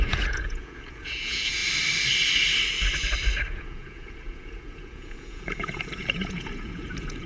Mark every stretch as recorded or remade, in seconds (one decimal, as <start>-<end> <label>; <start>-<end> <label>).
0.0-1.6 remade; 1.6-3.5 recorded; 3.5-7.3 remade

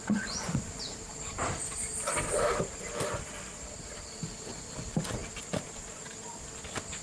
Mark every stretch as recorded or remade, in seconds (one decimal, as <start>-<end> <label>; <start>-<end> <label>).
0.0-0.8 remade; 0.8-7.0 recorded